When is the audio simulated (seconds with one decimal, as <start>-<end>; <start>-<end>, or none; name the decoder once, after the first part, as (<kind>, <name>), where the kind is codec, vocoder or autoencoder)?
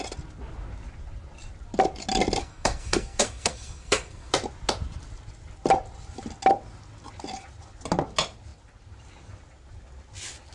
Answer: 2.4-4.3 (codec, SNAC)